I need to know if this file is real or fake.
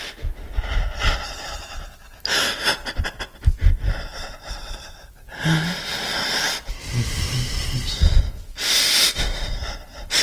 real